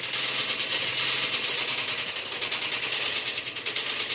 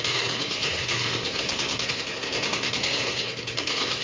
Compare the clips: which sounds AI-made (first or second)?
second